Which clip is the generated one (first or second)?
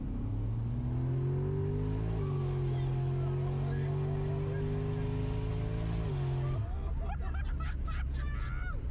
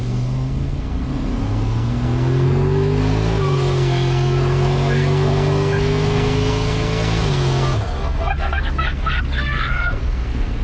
second